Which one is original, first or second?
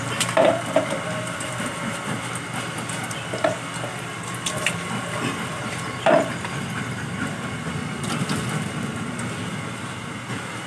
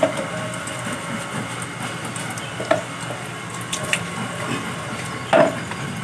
second